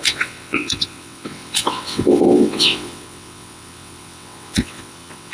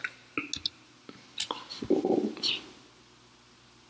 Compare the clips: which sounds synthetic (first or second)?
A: first